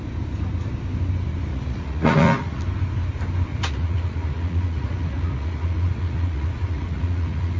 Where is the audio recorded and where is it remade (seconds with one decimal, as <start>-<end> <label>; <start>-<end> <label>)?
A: 0.0-1.5 recorded; 1.5-2.6 remade; 2.6-3.5 recorded; 3.5-7.6 remade